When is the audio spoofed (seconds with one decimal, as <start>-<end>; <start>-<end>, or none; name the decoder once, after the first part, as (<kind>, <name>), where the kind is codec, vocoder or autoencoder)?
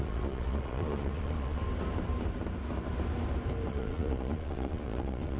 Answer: 0.0-1.6 (vocoder, Vocos); 3.7-5.4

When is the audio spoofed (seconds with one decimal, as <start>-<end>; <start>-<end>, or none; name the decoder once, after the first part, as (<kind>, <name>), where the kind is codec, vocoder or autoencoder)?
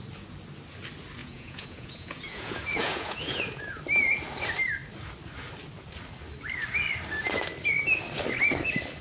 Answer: 1.2-3.8 (vocoder, Vocos)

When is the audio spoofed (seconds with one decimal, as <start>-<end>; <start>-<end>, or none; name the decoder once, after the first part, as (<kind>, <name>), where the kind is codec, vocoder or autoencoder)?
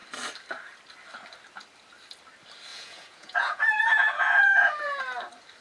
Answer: 2.7-5.0 (vocoder, Vocos)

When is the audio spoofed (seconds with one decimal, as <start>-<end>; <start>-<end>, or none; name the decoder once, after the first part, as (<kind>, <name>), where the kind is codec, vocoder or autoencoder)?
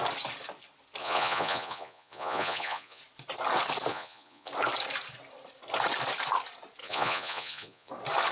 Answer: 1.0-3.0 (vocoder, Vocos); 3.9-4.5; 6.8-7.9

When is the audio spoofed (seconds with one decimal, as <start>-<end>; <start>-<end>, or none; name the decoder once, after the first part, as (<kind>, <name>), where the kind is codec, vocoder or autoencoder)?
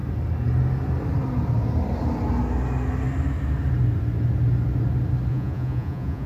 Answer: 5.3-6.3 (vocoder, Vocos)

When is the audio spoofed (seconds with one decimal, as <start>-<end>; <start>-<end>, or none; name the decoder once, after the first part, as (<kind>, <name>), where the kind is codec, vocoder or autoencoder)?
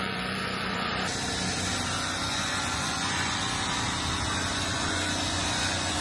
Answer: 0.0-0.9 (vocoder, Vocos); 2.2-3.4; 4.5-6.0